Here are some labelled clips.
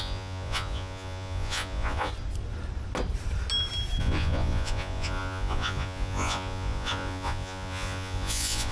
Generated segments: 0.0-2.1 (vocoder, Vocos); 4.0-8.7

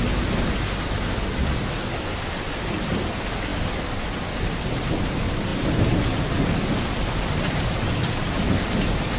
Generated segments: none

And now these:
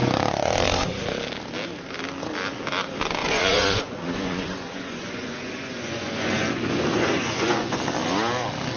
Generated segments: 0.0-1.0 (vocoder, Vocos); 3.2-7.8